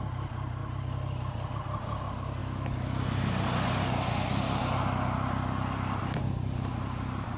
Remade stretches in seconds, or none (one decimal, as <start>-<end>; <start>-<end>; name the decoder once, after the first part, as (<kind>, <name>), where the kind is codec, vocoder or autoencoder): none